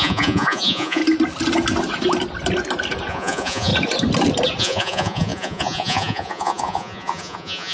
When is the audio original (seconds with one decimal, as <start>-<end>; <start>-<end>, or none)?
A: 1.0-3.1; 3.7-4.6